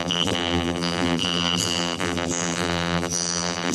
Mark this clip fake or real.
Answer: fake